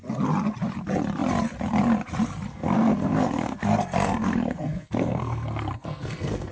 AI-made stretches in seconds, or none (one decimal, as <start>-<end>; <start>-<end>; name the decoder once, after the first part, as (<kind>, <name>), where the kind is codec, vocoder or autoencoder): 2.5-6.5 (codec, SNAC)